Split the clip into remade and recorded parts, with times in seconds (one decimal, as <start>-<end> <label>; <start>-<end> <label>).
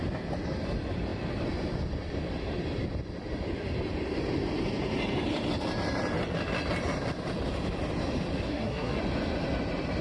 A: 0.0-8.5 recorded; 8.5-9.0 remade; 9.0-10.0 recorded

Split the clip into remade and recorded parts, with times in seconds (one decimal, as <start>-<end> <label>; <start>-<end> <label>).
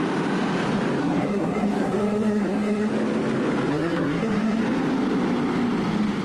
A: 0.0-1.0 recorded; 1.0-2.9 remade; 2.9-3.7 recorded; 3.7-4.6 remade; 4.6-6.2 recorded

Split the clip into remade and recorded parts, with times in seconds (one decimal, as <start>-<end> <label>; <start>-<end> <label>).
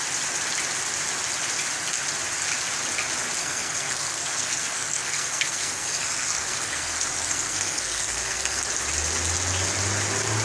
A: 0.0-3.4 recorded; 3.4-8.6 remade; 8.6-10.4 recorded